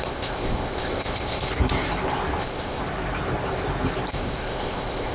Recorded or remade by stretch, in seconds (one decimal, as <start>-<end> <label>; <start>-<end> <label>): 0.0-1.5 remade; 1.5-2.4 recorded; 2.4-2.8 remade; 2.8-4.1 recorded; 4.1-5.1 remade